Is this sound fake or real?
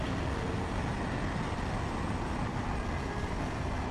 real